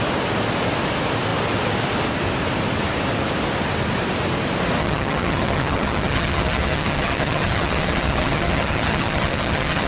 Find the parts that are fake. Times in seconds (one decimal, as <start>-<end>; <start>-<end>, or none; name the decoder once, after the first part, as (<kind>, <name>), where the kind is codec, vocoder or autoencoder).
4.8-9.9 (vocoder, HiFi-GAN)